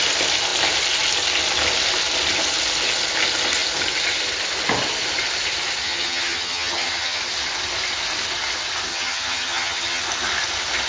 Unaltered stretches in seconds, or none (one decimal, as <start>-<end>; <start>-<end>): 0.0-5.8; 7.2-8.9; 10.0-10.9